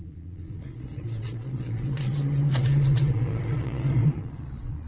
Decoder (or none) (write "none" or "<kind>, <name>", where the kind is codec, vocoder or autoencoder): vocoder, Vocos